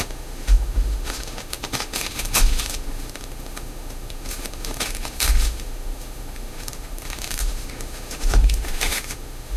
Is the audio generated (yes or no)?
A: yes